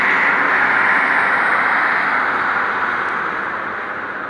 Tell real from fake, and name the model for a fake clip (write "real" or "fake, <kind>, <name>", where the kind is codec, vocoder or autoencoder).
real